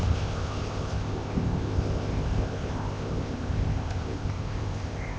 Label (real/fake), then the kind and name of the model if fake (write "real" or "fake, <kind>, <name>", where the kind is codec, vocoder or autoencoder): fake, codec, ZipCodec